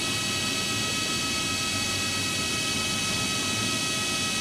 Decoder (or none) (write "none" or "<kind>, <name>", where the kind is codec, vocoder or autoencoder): none